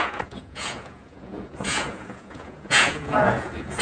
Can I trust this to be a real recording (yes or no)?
no